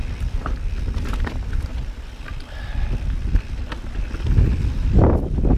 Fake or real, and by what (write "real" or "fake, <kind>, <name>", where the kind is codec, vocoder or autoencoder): real